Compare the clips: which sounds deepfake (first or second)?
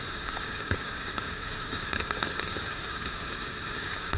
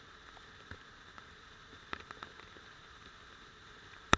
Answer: first